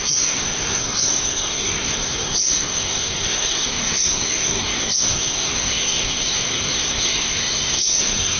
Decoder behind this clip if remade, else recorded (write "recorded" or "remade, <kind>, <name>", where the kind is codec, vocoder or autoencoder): remade, codec, SNAC